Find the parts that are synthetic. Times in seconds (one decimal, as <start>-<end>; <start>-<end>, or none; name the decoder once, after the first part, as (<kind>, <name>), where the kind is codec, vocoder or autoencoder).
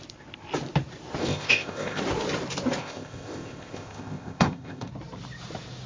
1.2-2.0 (codec, ZipCodec); 2.8-4.9